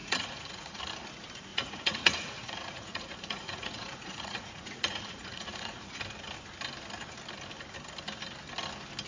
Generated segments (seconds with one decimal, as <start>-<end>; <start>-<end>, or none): 0.0-0.8; 1.5-6.0